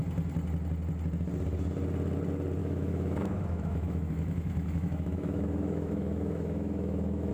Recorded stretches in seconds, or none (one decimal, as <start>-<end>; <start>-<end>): 0.0-2.6